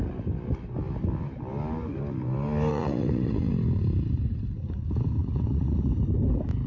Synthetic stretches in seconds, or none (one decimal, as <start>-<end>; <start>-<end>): 2.7-3.5; 5.2-5.9